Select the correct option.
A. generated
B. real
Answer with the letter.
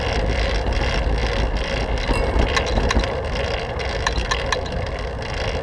B